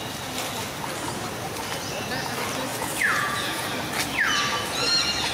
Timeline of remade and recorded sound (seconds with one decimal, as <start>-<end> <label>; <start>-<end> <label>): 0.0-2.7 recorded; 2.7-3.7 remade; 3.7-5.3 recorded